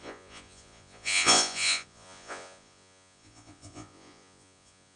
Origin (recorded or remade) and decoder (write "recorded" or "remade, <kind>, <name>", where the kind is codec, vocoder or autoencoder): remade, vocoder, Vocos